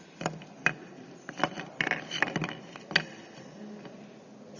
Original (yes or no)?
yes